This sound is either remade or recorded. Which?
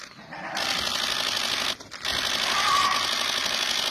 recorded